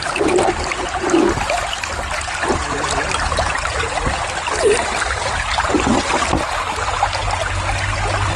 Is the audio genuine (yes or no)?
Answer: yes